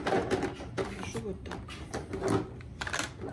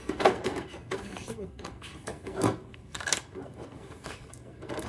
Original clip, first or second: first